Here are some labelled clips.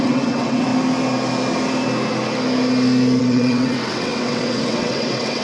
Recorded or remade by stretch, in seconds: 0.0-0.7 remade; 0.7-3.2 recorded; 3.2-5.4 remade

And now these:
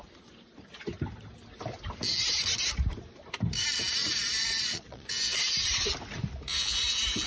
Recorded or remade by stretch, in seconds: 0.0-4.0 recorded; 4.0-5.1 remade; 5.1-7.3 recorded

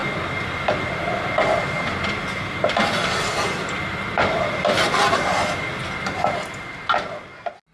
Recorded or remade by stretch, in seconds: 0.0-7.7 recorded